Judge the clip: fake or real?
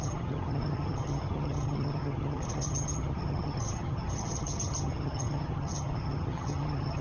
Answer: fake